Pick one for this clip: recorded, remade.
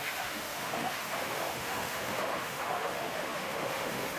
remade